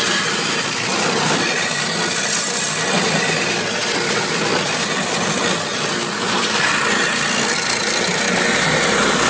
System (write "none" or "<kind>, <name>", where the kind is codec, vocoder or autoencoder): none